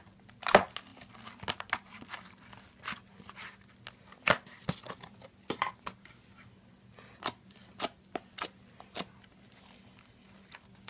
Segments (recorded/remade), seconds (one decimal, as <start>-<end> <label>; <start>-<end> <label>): 0.0-10.9 recorded